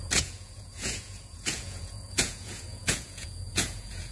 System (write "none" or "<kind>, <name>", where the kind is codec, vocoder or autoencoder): vocoder, Vocos